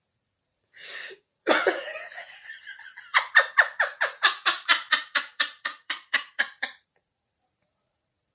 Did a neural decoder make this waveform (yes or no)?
yes